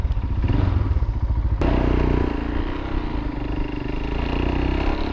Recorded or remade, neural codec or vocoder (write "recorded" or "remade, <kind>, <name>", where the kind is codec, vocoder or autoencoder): recorded